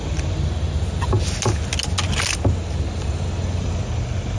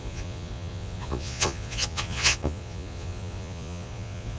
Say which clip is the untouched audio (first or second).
first